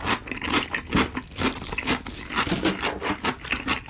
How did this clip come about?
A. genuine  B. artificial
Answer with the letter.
A